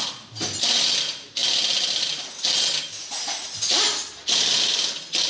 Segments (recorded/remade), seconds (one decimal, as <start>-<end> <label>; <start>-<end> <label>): 0.0-5.3 recorded